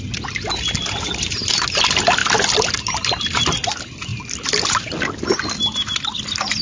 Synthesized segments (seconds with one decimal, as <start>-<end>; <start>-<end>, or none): none